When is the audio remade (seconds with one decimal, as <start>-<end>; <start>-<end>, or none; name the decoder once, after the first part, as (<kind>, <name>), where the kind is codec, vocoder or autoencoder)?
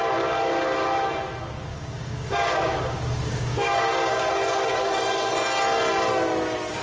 1.7-4.3 (codec, DAC); 4.7-5.3